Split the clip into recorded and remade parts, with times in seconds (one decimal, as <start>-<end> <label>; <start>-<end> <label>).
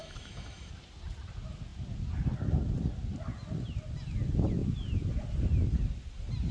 0.0-0.7 remade; 0.7-6.5 recorded